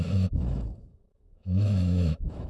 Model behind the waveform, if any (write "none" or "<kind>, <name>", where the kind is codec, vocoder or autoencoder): autoencoder, DAC-VAE